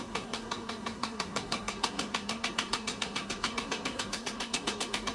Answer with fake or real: fake